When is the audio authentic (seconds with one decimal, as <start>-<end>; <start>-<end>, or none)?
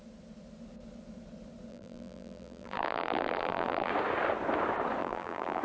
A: 0.0-1.7; 3.9-5.0